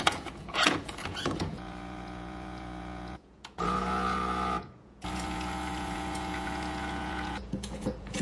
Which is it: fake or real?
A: fake